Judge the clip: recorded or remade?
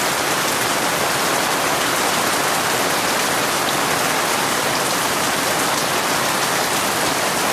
recorded